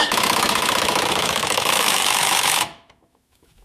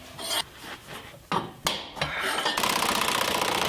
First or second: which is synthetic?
first